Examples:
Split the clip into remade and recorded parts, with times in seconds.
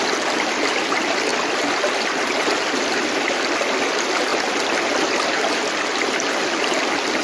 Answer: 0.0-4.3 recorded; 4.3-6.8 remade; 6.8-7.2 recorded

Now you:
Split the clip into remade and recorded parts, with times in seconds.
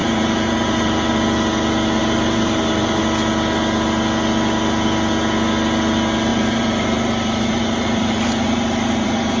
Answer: 0.0-1.1 remade; 1.1-2.0 recorded; 2.0-3.0 remade; 3.0-6.3 recorded; 6.3-9.4 remade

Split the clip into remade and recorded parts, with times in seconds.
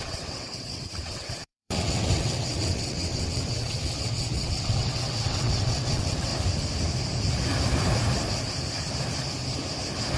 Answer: 0.0-6.3 remade; 6.3-10.2 recorded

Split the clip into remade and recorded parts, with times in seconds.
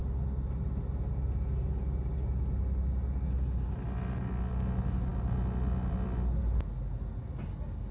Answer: 0.0-7.9 recorded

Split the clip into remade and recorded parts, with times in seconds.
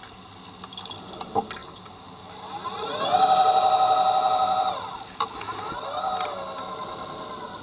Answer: 0.0-7.6 recorded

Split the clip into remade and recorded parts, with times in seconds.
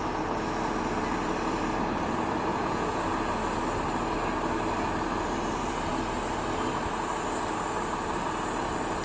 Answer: 0.0-2.5 recorded; 2.5-3.0 remade; 3.0-9.0 recorded